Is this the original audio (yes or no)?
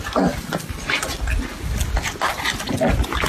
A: yes